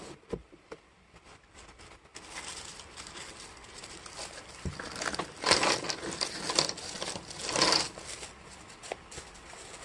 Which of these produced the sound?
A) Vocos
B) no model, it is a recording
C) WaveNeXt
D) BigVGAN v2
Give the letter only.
B